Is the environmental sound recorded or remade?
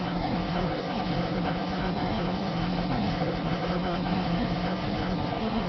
remade